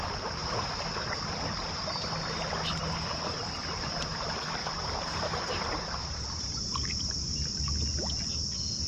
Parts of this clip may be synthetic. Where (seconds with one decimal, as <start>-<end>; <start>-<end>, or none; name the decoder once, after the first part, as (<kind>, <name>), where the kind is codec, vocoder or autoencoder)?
0.4-0.9 (vocoder, BigVGAN v2); 4.6-7.7